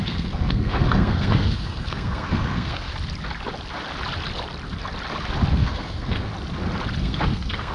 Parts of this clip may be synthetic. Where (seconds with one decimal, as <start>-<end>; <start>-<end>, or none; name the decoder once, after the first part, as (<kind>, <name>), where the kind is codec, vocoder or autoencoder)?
0.0-2.9 (codec, SNAC); 5.5-6.3; 7.0-7.7

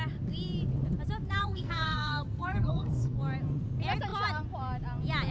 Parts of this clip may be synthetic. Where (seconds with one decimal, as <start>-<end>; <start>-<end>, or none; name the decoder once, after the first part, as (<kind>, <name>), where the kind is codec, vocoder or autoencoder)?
1.4-3.2 (codec, SNAC)

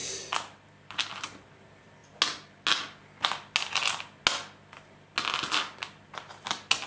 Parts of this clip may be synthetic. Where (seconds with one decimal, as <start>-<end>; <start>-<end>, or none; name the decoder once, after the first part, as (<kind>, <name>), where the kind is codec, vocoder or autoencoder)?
none

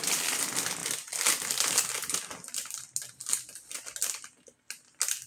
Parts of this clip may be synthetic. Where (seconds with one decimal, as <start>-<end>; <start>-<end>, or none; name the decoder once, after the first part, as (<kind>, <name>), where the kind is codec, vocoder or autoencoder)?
none

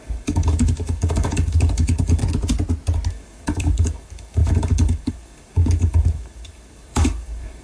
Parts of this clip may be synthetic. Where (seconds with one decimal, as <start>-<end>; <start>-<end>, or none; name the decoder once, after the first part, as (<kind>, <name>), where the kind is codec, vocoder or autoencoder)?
0.0-2.2 (codec, DAC); 3.1-7.6

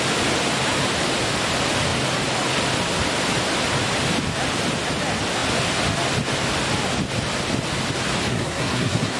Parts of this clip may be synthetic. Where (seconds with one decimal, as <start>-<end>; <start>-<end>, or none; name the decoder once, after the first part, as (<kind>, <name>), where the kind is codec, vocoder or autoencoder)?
8.3-9.2 (codec, SNAC)